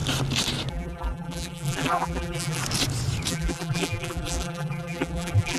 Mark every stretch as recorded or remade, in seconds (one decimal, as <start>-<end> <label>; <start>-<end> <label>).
0.0-0.7 recorded; 0.7-2.6 remade; 2.6-3.3 recorded; 3.3-5.6 remade